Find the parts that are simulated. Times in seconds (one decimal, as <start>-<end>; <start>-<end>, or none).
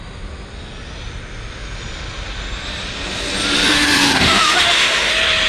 3.7-5.1